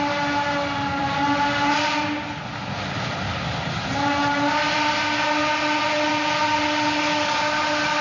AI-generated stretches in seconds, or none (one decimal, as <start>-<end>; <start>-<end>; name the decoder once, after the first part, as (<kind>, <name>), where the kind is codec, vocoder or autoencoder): none